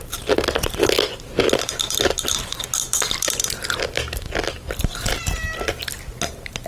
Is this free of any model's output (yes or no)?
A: yes